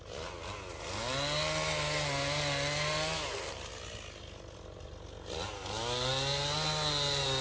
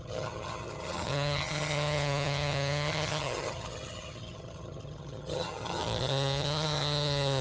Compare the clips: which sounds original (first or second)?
first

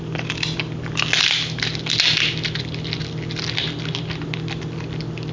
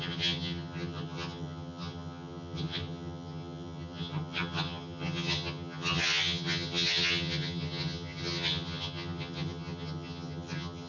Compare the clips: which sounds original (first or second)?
first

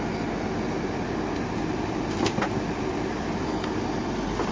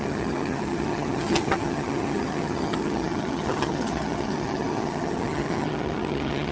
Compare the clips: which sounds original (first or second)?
first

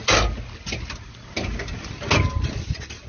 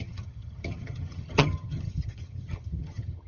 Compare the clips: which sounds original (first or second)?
first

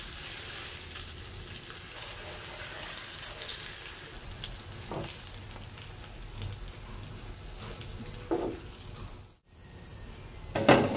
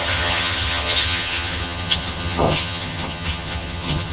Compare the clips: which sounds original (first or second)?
first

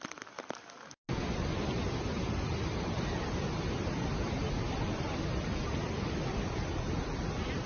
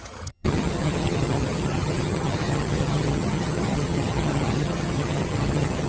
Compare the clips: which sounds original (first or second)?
first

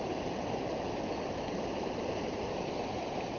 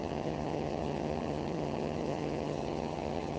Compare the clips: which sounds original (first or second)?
first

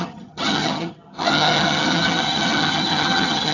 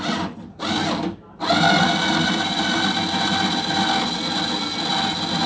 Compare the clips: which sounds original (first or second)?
second